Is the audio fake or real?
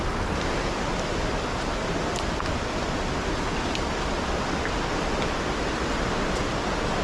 real